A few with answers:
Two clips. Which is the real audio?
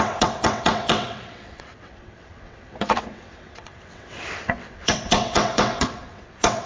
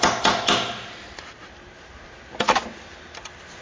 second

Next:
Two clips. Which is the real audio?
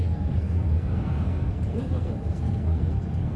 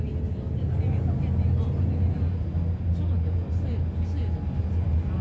second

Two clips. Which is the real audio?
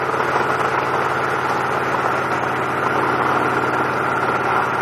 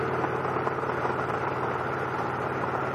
first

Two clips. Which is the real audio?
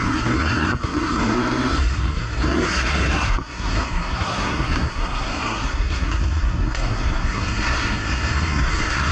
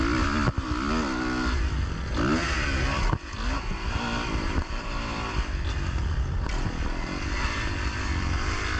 second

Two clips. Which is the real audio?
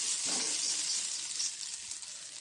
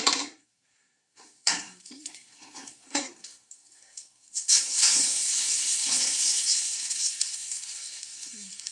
first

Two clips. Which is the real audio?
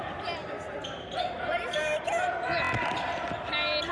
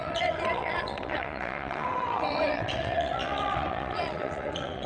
first